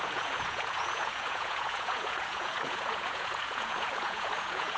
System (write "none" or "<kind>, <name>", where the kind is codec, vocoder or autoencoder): vocoder, Vocos